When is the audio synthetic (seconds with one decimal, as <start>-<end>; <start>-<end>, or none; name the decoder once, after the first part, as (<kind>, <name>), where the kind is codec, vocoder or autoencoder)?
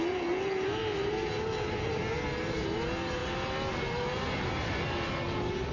none